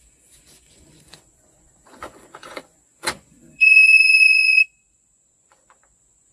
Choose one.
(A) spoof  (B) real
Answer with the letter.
A